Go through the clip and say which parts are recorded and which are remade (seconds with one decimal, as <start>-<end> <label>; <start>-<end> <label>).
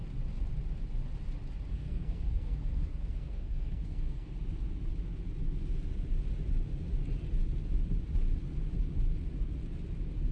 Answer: 0.0-1.7 recorded; 1.7-4.3 remade; 4.3-10.3 recorded